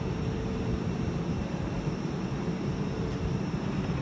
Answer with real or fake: fake